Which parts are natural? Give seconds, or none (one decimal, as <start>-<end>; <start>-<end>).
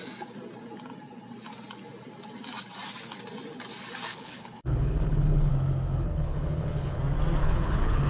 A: 0.0-4.1; 5.5-5.9; 7.0-7.4